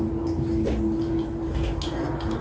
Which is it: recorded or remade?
recorded